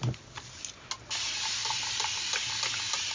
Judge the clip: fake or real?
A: real